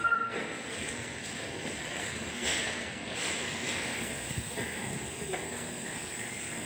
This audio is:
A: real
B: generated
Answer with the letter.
B